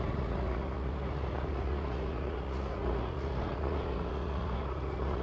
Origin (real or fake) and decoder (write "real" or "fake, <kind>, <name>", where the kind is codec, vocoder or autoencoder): fake, vocoder, Vocos